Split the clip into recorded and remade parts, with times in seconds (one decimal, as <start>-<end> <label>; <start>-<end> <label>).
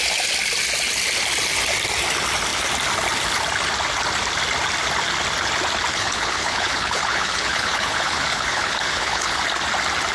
0.0-5.9 recorded; 5.9-9.4 remade; 9.4-10.1 recorded